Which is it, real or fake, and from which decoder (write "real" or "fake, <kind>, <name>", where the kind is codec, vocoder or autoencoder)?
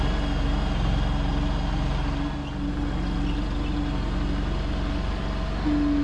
real